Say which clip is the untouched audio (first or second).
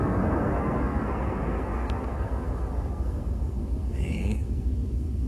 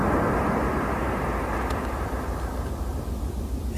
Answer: second